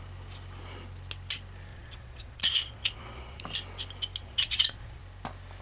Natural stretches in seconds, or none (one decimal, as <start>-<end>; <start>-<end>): 0.0-1.7; 3.4-4.2; 5.0-5.6